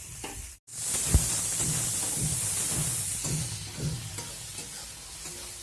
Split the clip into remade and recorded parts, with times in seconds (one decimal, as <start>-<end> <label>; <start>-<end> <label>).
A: 0.0-5.6 recorded